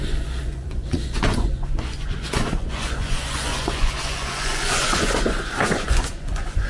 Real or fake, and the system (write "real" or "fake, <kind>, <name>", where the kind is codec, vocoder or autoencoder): fake, vocoder, Vocos